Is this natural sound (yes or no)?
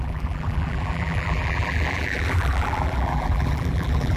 no